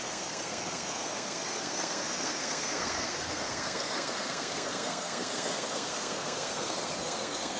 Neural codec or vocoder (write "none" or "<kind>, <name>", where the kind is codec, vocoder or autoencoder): codec, SNAC